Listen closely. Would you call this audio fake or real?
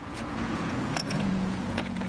fake